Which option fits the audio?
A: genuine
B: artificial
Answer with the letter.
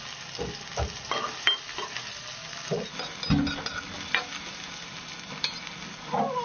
A